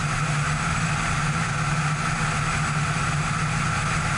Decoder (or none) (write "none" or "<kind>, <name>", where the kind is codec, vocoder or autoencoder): none